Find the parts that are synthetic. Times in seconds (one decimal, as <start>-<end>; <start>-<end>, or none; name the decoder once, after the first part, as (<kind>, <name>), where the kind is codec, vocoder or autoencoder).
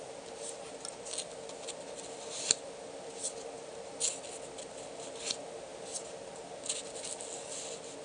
none